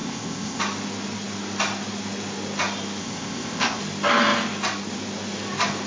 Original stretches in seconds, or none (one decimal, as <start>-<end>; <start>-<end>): 0.6-3.0; 3.8-5.9